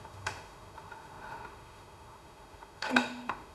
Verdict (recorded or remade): remade